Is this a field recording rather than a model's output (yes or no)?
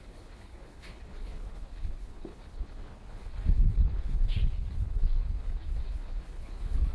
no